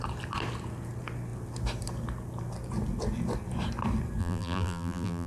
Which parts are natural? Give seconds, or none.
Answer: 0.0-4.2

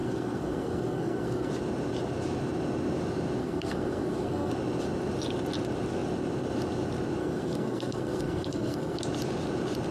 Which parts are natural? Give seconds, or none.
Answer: 1.5-3.4; 4.5-7.2; 9.0-9.9

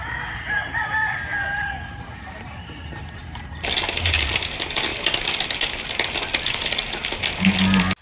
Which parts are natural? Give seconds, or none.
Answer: 0.0-4.9; 5.4-8.0

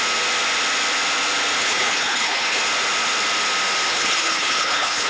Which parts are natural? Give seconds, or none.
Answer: 0.0-1.6; 2.6-3.9